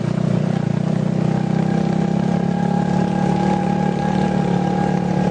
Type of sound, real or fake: real